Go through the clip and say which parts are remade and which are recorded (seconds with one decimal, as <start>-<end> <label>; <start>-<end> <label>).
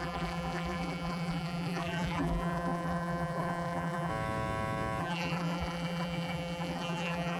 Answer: 0.0-4.1 remade; 4.1-5.0 recorded; 5.0-7.4 remade